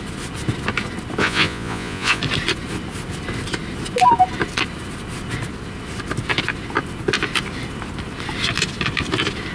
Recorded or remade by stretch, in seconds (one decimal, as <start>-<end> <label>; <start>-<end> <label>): 0.0-1.2 recorded; 1.2-2.2 remade; 2.2-9.5 recorded